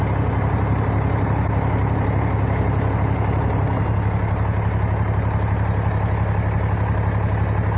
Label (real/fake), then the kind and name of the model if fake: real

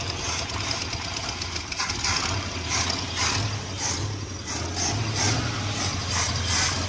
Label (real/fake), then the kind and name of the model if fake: real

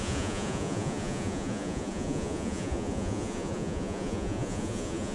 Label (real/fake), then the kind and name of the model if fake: fake, vocoder, Vocos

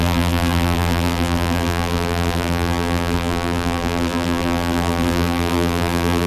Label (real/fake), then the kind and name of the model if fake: fake, vocoder, BigVGAN v2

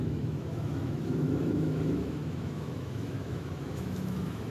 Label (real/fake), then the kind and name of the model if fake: fake, autoencoder, DAC-VAE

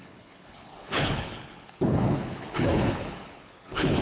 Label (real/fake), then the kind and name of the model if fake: fake, codec, HILCodec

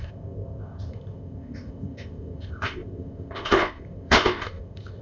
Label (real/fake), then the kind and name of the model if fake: fake, codec, ZipCodec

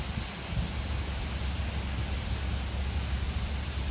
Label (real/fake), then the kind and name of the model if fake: real